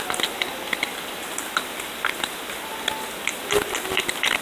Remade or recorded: recorded